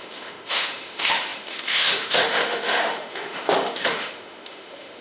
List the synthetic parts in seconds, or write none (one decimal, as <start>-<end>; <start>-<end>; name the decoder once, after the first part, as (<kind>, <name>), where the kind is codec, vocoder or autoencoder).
0.0-5.0 (autoencoder, DAC-VAE)